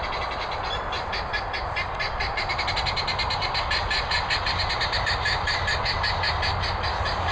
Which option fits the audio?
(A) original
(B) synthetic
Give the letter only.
A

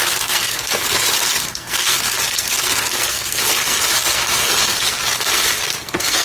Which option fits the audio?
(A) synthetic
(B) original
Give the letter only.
A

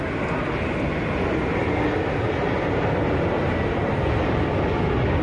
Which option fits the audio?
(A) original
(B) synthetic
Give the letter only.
A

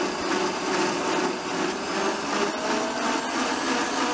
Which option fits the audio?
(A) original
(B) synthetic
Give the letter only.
A